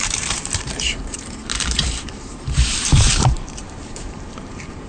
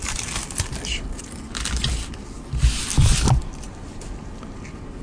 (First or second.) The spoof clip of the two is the first